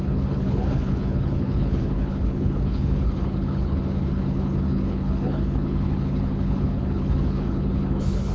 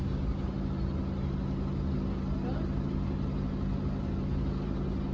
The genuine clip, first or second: second